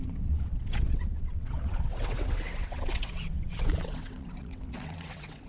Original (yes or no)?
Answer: no